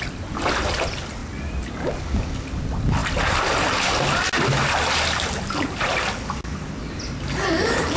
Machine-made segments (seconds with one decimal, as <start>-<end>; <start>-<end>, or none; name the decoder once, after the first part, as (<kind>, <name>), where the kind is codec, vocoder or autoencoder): none